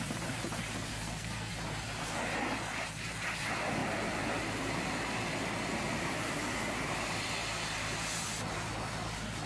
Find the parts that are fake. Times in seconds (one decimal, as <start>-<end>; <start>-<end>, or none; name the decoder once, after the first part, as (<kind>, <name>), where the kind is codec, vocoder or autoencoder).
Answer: 0.9-1.5 (codec, SNAC)